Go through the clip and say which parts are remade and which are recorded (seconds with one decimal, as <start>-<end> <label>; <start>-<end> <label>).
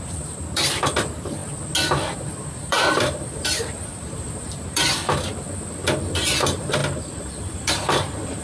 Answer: 0.0-1.4 remade; 1.4-2.5 recorded; 2.5-5.0 remade; 5.0-6.1 recorded; 6.1-8.4 remade